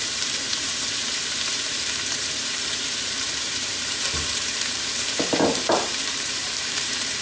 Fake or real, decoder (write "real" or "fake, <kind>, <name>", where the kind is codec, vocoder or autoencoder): fake, vocoder, BigVGAN v2